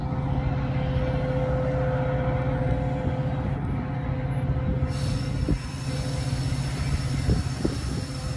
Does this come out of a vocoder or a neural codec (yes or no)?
no